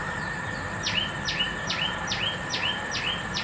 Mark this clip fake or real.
fake